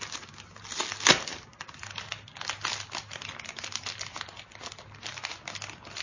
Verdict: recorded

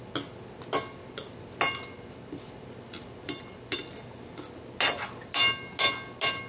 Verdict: recorded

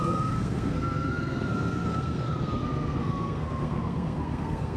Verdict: remade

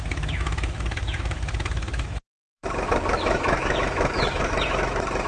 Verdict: remade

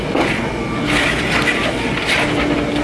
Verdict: recorded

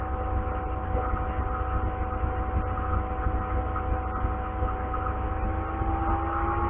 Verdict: recorded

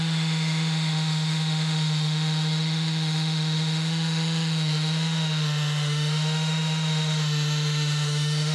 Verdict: remade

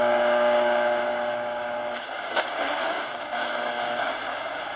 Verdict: remade